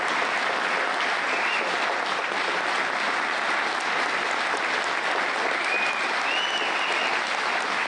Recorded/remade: recorded